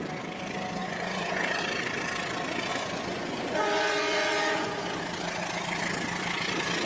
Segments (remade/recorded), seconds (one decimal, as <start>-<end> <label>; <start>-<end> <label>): 0.0-0.8 recorded; 0.8-1.6 remade; 1.6-2.7 recorded; 2.7-5.0 remade; 5.0-6.9 recorded